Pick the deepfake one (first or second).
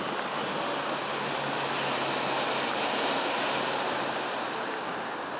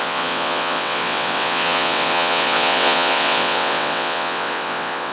second